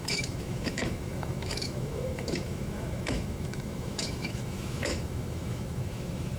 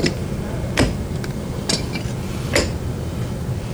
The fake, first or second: first